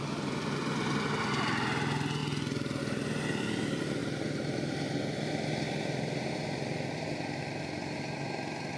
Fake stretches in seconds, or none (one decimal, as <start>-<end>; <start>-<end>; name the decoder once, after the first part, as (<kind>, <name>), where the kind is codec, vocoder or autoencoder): none